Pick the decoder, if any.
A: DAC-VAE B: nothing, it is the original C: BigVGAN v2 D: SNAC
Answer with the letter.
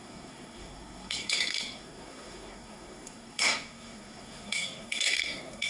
D